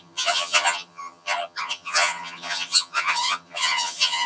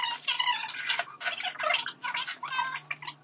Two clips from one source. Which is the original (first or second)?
second